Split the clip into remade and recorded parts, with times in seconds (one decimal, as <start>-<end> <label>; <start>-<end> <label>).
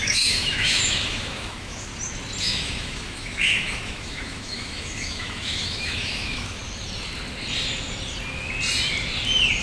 0.0-1.9 remade; 1.9-2.4 recorded; 2.4-6.6 remade; 6.6-9.6 recorded